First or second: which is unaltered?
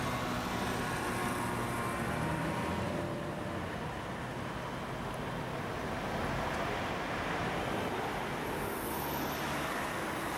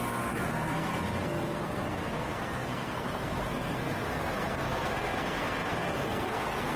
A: first